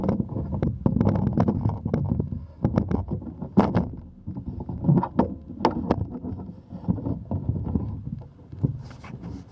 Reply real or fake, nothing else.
real